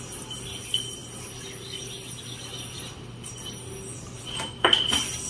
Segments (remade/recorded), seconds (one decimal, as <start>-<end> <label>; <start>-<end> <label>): 0.0-5.3 recorded

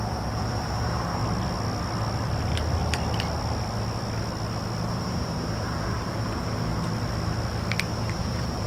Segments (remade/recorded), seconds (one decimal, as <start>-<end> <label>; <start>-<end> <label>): 0.0-1.2 remade; 1.2-4.9 recorded; 4.9-6.7 remade; 6.7-7.8 recorded; 7.8-8.7 remade